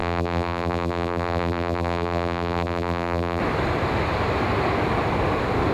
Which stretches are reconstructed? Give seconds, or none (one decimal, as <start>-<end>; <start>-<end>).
0.0-3.4